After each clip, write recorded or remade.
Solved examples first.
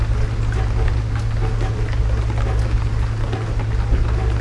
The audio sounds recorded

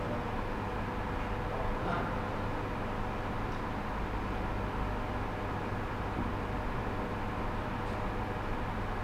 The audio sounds recorded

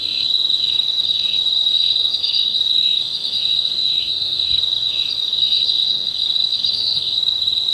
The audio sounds remade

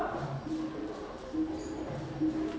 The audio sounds recorded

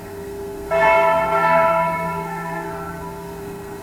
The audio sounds remade